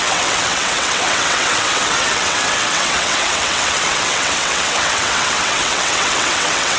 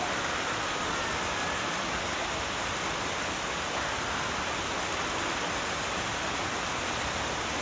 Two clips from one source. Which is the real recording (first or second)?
second